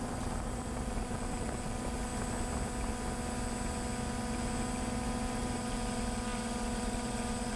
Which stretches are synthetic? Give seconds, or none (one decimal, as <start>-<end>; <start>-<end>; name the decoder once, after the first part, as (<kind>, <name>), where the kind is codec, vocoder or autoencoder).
0.0-2.1 (vocoder, BigVGAN v2); 5.4-7.6